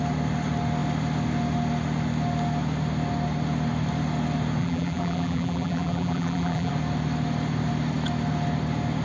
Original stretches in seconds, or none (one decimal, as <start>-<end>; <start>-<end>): 0.0-4.6; 6.7-9.0

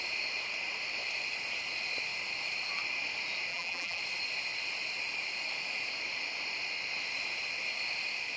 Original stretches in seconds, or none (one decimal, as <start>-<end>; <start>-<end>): 0.0-3.5; 4.0-8.4

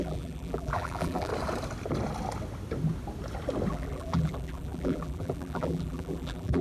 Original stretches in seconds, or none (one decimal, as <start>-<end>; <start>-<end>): 1.3-3.7

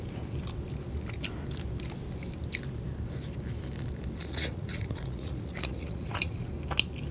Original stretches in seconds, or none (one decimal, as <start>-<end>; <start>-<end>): 0.0-4.2; 6.5-7.1

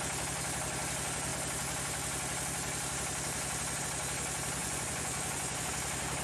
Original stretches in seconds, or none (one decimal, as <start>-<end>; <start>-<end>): 0.0-4.6; 5.7-6.2

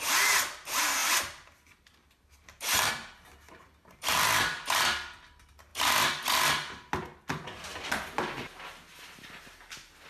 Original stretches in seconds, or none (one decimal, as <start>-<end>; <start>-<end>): 0.0-1.0; 2.9-5.7; 6.9-10.1

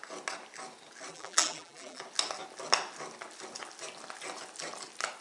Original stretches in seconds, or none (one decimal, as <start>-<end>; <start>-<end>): 0.0-1.1; 2.0-5.2